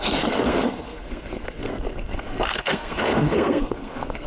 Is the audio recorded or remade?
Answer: remade